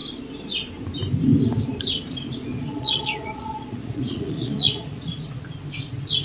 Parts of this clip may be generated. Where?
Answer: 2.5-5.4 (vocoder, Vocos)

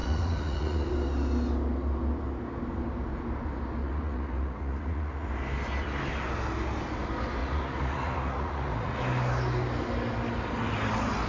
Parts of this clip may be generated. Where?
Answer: 0.0-0.9 (vocoder, Vocos); 3.8-5.3; 7.4-9.0

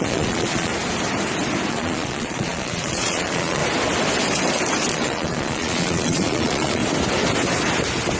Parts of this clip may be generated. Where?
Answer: 0.0-0.7 (vocoder, Vocos); 1.7-3.6; 4.9-6.8

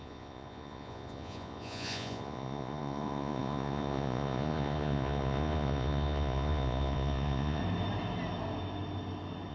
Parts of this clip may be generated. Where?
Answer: 0.0-7.6 (vocoder, Vocos)

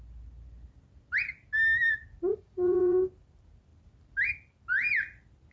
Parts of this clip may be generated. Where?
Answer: 2.3-3.0 (vocoder, Vocos)

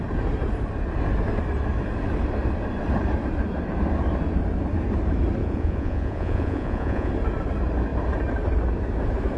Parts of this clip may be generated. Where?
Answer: 5.4-7.1 (vocoder, Vocos)

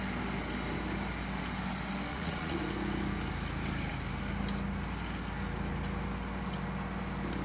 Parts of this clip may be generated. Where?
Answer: 2.1-2.6 (vocoder, Vocos)